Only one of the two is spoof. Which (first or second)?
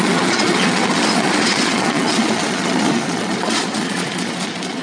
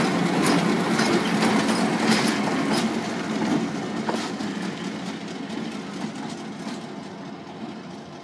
first